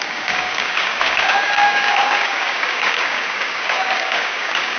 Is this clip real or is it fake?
fake